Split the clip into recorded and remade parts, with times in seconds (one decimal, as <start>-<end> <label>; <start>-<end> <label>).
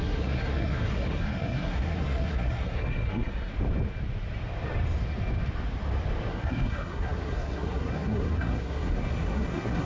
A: 0.0-3.5 remade; 3.5-6.3 recorded; 6.3-9.9 remade